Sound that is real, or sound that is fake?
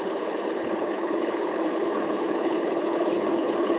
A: fake